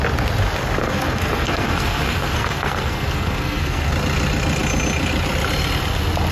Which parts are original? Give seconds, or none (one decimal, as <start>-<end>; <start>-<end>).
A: 0.0-0.8; 3.9-6.3